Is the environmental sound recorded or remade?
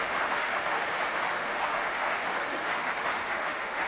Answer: remade